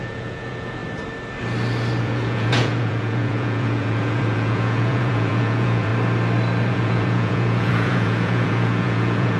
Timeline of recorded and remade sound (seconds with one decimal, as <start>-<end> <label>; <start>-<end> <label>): 0.0-0.8 remade; 0.8-2.0 recorded; 2.0-5.9 remade; 5.9-6.7 recorded; 6.7-9.4 remade